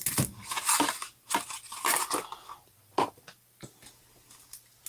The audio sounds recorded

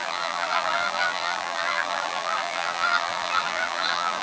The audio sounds remade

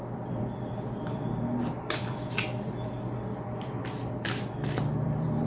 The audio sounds remade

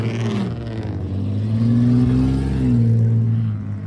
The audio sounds recorded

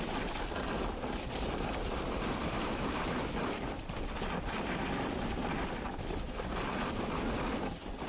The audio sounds remade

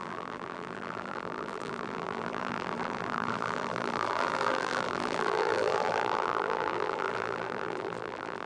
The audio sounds remade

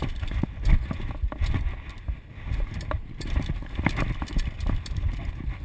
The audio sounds recorded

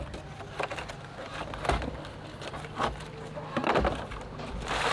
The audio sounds recorded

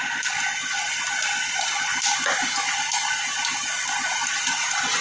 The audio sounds recorded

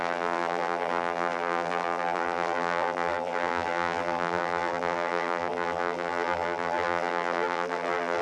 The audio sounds remade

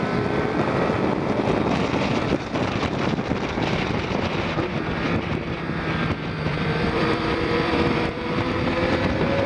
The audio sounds remade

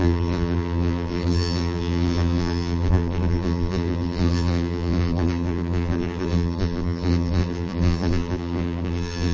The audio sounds remade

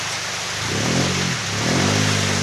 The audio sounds recorded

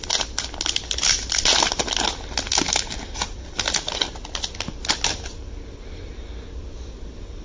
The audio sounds recorded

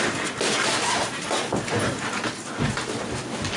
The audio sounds recorded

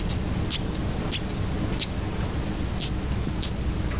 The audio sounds recorded